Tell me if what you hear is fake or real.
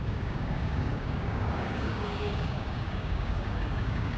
fake